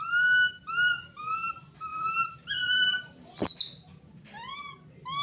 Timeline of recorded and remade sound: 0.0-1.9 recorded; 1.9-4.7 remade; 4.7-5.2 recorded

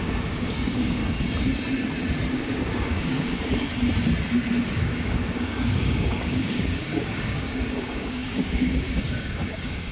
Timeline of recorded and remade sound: 0.0-1.0 remade; 1.0-2.3 recorded; 2.3-3.7 remade; 3.7-4.7 recorded; 4.7-9.9 remade

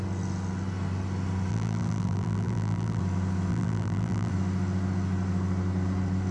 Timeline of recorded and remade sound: 0.0-1.5 recorded; 1.5-3.0 remade; 3.0-3.5 recorded; 3.5-4.3 remade; 4.3-6.3 recorded

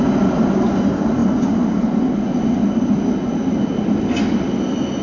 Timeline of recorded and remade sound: 0.0-5.0 recorded

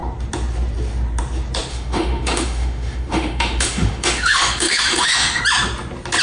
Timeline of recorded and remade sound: 0.0-1.7 recorded; 1.7-5.4 remade; 5.4-6.2 recorded

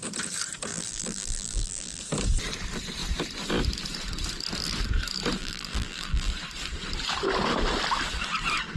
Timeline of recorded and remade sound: 0.0-0.7 recorded; 0.7-2.0 remade; 2.0-5.4 recorded; 5.4-6.3 remade; 6.3-8.8 recorded